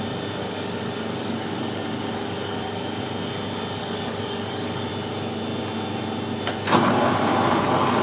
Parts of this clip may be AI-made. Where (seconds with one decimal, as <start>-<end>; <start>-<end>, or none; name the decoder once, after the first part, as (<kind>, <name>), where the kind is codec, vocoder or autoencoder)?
0.4-3.0 (codec, DAC); 3.8-4.9